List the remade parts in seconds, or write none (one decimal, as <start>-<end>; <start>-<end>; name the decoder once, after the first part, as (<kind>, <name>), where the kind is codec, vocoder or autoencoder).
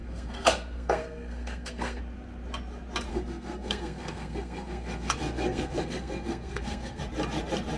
0.0-2.0 (codec, SNAC); 3.1-7.0